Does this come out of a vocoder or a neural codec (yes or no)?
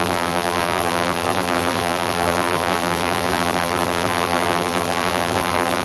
yes